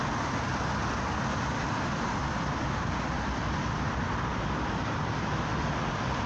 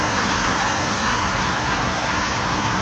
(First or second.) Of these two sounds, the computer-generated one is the second